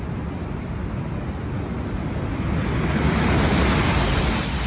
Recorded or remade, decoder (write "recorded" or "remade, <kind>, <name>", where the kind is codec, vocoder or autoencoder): recorded